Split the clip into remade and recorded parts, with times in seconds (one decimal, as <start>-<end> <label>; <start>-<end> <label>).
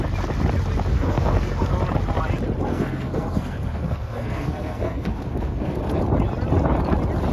0.0-0.9 recorded; 0.9-1.7 remade; 1.7-2.7 recorded; 2.7-6.0 remade; 6.0-7.3 recorded